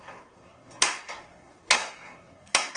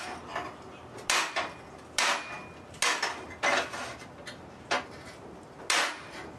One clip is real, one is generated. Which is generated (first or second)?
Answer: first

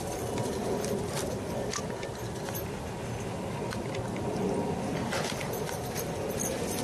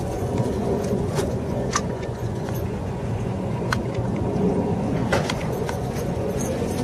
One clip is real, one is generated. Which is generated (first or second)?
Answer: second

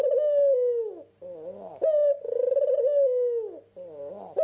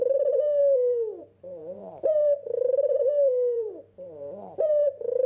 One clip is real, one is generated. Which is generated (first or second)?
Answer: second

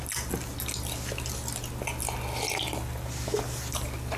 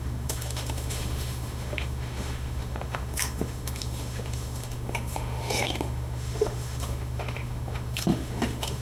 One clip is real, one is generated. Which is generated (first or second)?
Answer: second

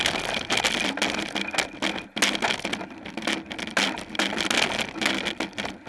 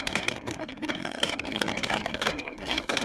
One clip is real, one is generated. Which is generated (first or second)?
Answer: second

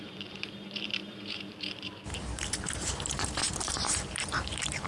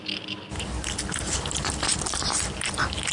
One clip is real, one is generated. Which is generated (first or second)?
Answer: first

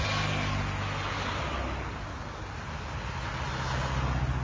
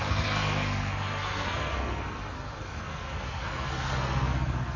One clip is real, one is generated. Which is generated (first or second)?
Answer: second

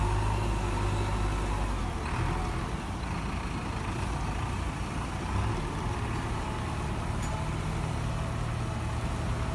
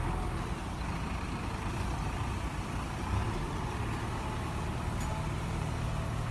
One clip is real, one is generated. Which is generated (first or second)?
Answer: second